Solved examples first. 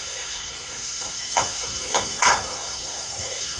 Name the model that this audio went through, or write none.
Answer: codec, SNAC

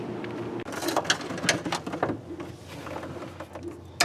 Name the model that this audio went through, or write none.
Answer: none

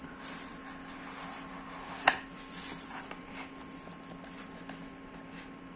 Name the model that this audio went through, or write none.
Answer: none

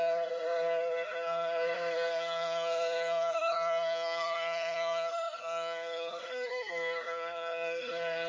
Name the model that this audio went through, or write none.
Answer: codec, SNAC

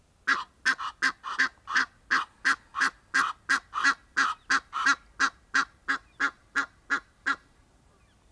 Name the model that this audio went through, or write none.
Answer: none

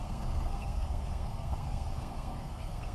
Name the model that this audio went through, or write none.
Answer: codec, SNAC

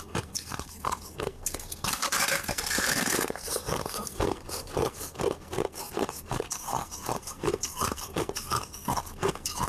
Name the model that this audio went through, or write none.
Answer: codec, SNAC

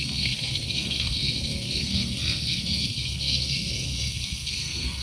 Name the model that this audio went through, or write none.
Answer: codec, SNAC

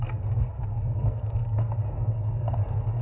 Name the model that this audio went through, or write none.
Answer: codec, SNAC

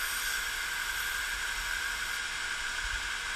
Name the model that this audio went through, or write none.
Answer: none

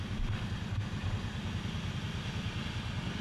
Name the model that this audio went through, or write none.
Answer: none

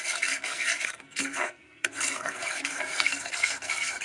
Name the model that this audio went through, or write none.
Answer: codec, SNAC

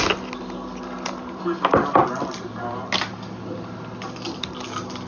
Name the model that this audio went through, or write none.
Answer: none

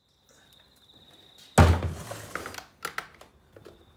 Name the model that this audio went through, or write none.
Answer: none